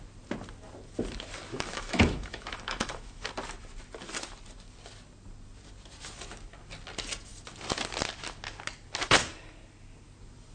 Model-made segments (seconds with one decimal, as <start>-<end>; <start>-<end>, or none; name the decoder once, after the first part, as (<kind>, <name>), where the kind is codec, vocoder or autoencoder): 1.5-3.3 (autoencoder, DAC-VAE)